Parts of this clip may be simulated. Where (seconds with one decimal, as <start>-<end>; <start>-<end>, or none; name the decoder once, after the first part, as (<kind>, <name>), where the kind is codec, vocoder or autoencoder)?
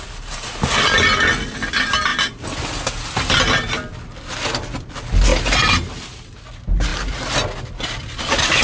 none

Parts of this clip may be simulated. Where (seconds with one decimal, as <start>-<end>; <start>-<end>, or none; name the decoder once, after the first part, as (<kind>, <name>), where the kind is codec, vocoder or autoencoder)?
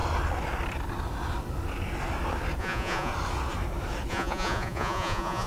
2.6-3.1 (vocoder, Vocos); 4.1-5.5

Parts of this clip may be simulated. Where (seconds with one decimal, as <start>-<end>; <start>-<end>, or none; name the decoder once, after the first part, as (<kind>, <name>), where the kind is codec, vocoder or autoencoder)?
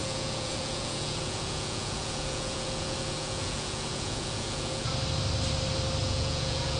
0.0-4.9 (vocoder, Vocos); 6.0-6.8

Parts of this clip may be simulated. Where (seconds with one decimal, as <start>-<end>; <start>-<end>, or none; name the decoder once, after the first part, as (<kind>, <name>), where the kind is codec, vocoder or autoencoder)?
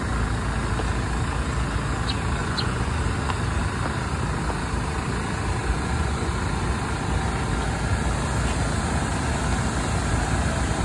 2.4-3.0 (vocoder, Vocos); 5.6-6.3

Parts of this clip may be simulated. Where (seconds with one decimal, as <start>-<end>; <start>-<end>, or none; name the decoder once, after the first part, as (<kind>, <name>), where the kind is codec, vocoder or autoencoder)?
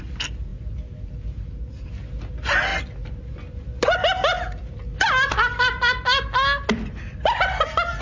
none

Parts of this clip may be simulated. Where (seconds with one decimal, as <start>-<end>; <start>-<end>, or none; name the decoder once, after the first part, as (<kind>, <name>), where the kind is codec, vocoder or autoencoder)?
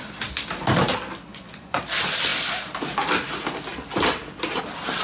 1.3-1.8 (vocoder, Vocos)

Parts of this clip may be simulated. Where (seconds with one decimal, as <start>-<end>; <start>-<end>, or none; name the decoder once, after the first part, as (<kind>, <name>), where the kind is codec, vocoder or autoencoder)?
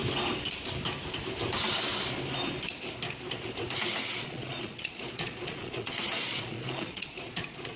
4.2-7.8 (vocoder, Vocos)